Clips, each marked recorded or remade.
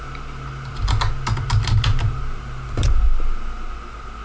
recorded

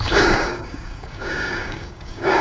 remade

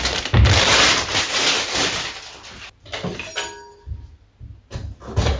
recorded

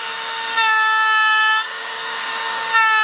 remade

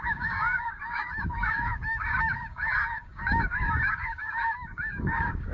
remade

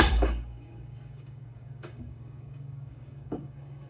remade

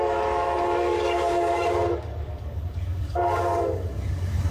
remade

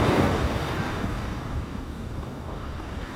remade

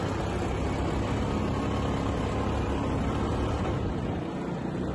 recorded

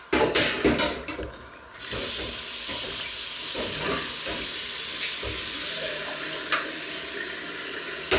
recorded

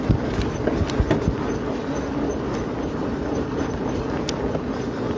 recorded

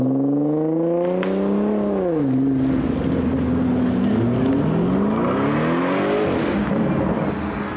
recorded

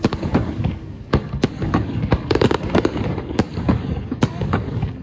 remade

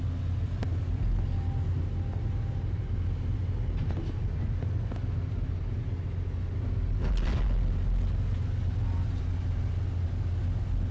recorded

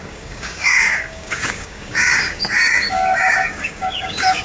remade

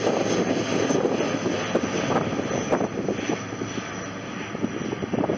recorded